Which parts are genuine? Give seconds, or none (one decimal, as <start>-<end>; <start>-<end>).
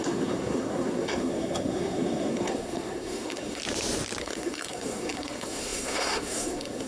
3.6-4.2